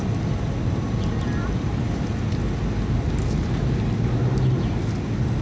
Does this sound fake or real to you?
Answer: real